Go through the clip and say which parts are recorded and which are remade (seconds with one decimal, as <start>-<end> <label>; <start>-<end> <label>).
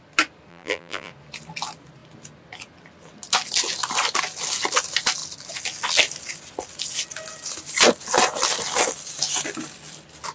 0.0-0.5 recorded; 0.5-1.1 remade; 1.1-10.3 recorded